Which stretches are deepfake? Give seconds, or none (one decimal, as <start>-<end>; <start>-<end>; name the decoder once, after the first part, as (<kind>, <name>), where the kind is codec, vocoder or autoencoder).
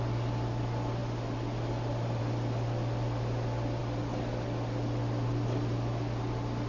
none